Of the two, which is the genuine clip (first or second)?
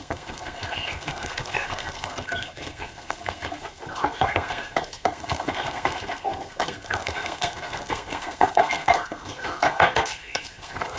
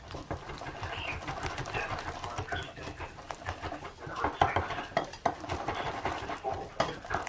second